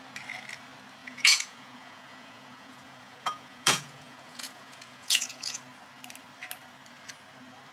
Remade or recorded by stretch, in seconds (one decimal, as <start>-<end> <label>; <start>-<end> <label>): 0.0-1.0 recorded; 1.0-5.6 remade; 5.6-7.7 recorded